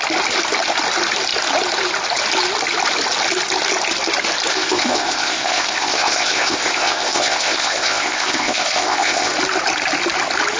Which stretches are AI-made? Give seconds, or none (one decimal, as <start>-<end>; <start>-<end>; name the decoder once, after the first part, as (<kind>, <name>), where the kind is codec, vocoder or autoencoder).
4.5-9.3 (codec, ZipCodec)